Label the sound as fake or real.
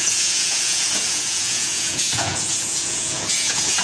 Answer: fake